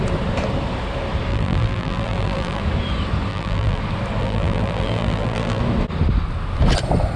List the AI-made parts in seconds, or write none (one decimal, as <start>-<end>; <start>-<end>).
1.3-2.6; 3.3-3.8; 4.2-5.6